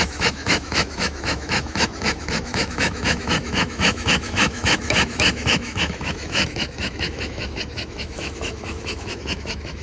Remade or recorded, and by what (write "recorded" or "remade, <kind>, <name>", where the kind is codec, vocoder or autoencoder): remade, autoencoder, DAC-VAE